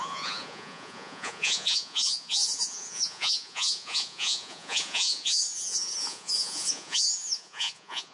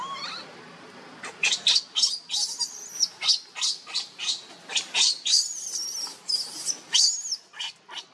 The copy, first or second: first